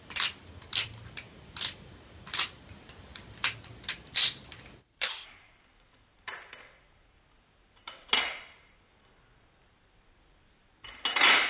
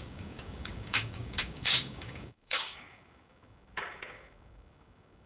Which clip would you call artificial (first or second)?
second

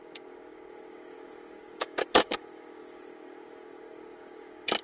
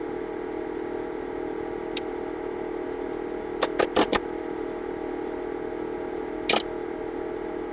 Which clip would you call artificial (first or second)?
first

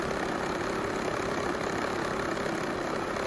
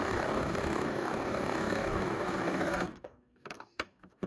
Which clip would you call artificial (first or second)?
second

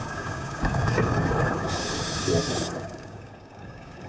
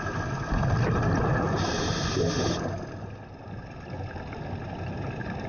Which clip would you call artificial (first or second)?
first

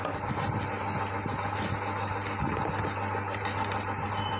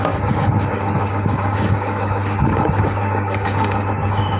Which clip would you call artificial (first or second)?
second